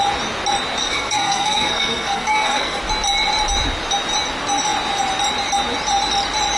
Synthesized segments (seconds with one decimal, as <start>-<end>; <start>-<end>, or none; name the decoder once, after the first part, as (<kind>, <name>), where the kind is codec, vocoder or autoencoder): 0.8-2.8 (codec, SNAC)